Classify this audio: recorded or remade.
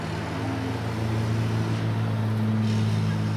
recorded